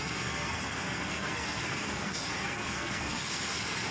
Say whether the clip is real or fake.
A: fake